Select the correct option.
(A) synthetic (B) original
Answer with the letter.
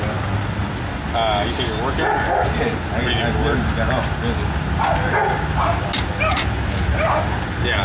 B